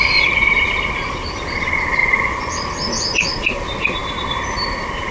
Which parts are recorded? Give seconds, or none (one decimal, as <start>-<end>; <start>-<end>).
0.0-2.0; 2.5-5.1